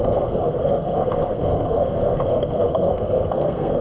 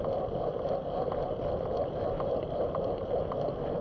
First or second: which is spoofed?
first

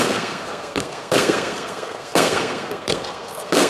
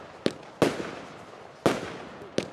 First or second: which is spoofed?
first